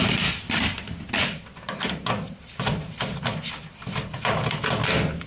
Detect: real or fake real